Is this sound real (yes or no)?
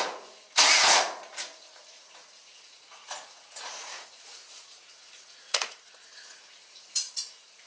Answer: no